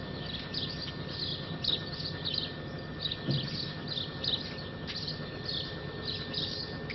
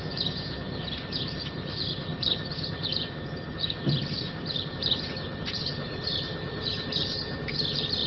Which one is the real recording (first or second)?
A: first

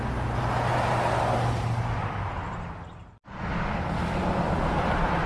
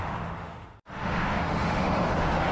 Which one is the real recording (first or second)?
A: first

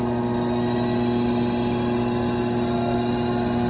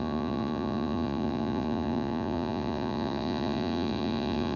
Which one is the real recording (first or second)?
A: first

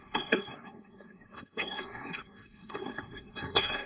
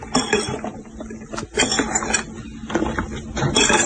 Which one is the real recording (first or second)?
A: second